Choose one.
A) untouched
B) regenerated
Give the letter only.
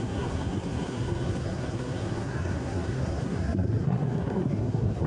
B